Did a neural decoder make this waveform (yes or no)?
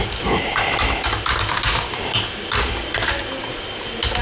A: no